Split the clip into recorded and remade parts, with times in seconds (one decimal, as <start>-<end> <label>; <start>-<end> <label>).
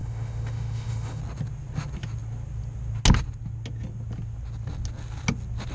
0.0-1.2 remade; 1.2-5.7 recorded